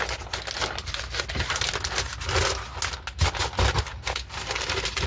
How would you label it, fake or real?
real